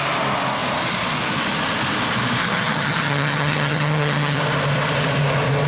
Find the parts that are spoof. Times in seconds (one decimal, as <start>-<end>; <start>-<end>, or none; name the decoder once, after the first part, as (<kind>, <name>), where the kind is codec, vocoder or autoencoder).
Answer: 2.4-4.4 (vocoder, HiFi-GAN)